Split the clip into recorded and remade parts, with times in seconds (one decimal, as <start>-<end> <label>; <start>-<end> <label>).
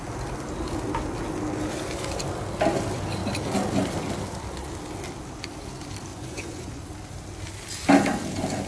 0.0-6.1 recorded; 6.1-6.8 remade; 6.8-8.7 recorded